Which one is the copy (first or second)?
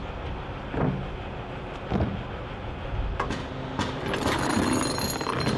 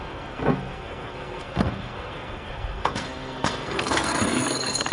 second